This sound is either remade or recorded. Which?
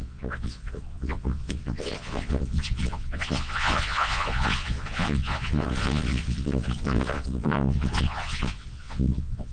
remade